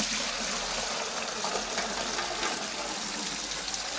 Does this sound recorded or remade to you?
recorded